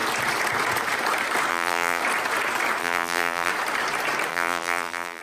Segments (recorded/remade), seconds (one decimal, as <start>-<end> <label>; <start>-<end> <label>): 0.0-1.5 recorded; 1.5-2.0 remade; 2.0-2.8 recorded; 2.8-3.5 remade; 3.5-4.3 recorded; 4.3-5.2 remade